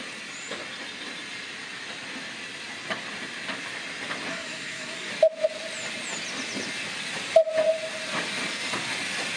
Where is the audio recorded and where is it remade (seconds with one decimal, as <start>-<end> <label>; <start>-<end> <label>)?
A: 0.0-4.3 recorded; 4.3-5.1 remade; 5.1-9.4 recorded